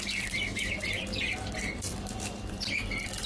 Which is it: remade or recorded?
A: remade